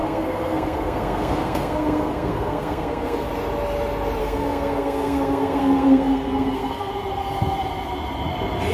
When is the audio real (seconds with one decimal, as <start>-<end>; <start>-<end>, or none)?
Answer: 3.3-4.2; 6.9-8.7

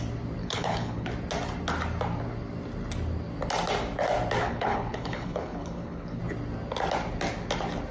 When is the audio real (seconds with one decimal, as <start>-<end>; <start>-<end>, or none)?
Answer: 0.0-0.4; 1.1-4.4; 6.2-7.9

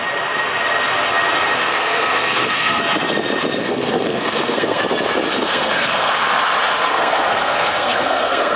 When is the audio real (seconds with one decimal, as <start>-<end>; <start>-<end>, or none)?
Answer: 0.0-1.6; 2.8-3.6; 4.8-5.3; 6.3-6.9

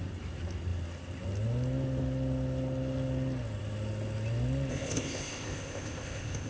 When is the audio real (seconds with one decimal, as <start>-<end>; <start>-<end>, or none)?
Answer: 0.0-4.7

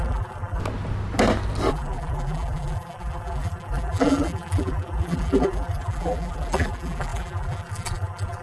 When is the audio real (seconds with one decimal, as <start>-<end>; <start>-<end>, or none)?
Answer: 0.6-1.7

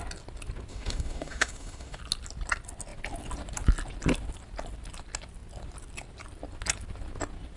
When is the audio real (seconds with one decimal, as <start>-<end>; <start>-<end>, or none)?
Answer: 0.0-0.7; 2.0-7.6

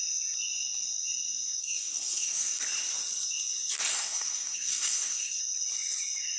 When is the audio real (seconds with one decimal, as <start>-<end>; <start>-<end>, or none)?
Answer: 0.0-1.6; 2.6-3.9; 5.4-6.4